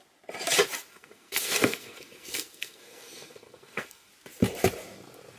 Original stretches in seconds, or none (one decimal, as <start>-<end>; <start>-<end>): 0.0-0.9; 4.1-5.4